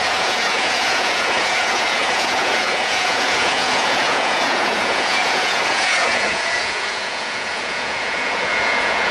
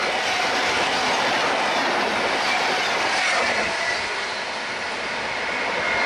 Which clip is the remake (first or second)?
first